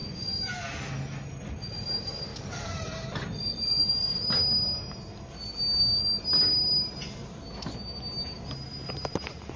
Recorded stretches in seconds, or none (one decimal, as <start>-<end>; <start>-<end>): 0.5-2.3; 3.8-9.6